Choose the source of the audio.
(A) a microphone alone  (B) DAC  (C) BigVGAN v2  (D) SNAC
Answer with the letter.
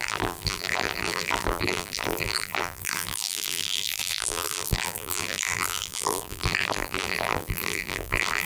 C